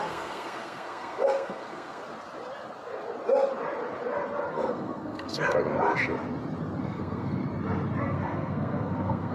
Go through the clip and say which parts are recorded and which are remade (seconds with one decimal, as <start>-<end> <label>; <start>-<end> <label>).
0.0-2.0 remade; 2.0-4.5 recorded; 4.5-5.6 remade; 5.6-6.8 recorded; 6.8-7.4 remade; 7.4-8.0 recorded; 8.0-9.3 remade

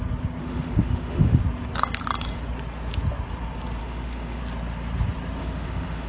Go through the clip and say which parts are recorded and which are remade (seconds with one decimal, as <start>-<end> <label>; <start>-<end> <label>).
0.0-0.4 recorded; 0.4-1.4 remade; 1.4-3.8 recorded; 3.8-4.4 remade; 4.4-5.4 recorded; 5.4-6.1 remade

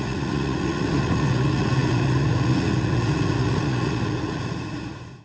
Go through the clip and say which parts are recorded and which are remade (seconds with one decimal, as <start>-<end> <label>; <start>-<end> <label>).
0.0-5.2 remade

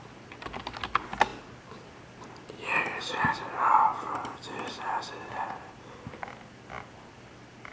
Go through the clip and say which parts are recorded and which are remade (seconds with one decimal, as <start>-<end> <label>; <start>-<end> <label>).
0.0-3.7 recorded; 3.7-5.7 remade; 5.7-7.7 recorded